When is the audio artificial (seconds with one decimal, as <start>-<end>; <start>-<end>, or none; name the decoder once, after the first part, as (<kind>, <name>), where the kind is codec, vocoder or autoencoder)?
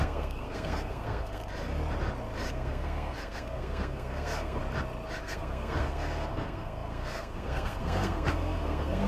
0.0-1.4 (codec, SNAC); 2.5-4.6; 5.2-9.1